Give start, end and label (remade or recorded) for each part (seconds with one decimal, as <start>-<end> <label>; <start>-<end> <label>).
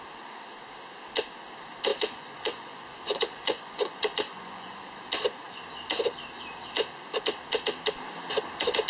0.0-1.9 recorded; 1.9-4.8 remade; 4.8-8.9 recorded